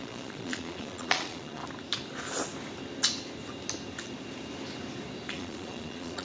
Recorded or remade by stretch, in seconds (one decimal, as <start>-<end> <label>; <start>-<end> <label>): 0.0-1.6 remade; 1.6-5.3 recorded; 5.3-6.2 remade